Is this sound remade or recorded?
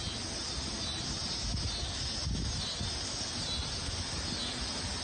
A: recorded